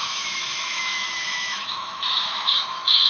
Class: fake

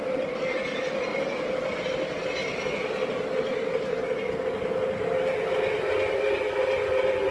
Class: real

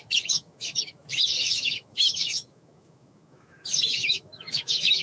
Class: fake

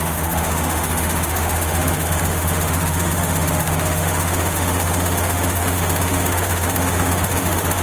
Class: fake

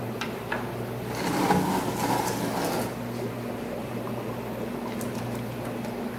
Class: real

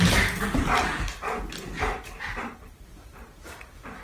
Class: real